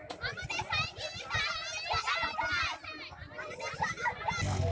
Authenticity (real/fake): real